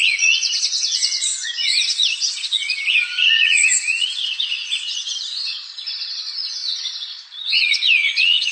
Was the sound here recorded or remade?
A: remade